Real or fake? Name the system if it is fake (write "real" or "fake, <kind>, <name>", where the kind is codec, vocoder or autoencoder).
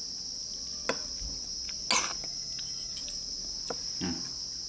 real